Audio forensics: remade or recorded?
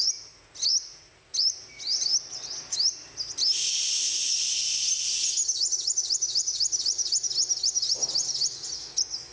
recorded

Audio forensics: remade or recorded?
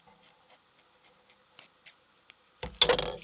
recorded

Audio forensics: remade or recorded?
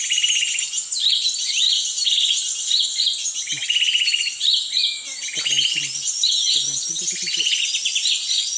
recorded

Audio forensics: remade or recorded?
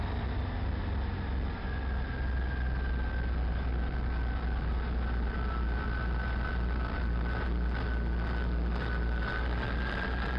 recorded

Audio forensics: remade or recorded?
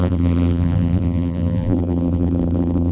remade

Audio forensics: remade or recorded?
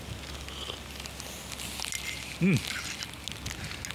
recorded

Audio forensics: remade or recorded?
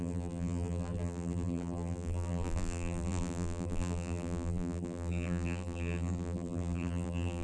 remade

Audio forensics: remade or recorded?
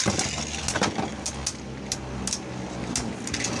recorded